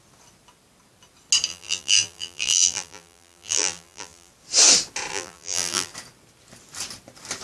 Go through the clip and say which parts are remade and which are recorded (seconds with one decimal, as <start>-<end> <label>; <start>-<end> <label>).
0.0-1.5 recorded; 1.5-4.3 remade; 4.3-5.1 recorded; 5.1-5.9 remade; 5.9-7.4 recorded